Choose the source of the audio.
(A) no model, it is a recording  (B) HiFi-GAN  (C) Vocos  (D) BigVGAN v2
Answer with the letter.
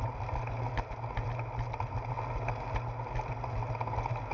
A